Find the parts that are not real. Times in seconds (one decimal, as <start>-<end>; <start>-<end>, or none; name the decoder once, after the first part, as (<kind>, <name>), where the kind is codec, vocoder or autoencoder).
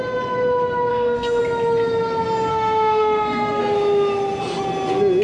0.9-1.4 (autoencoder, DAC-VAE); 2.5-3.6